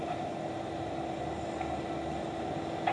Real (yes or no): yes